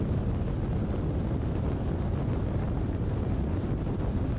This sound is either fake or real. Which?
real